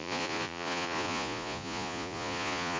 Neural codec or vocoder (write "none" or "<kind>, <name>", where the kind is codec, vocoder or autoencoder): vocoder, Vocos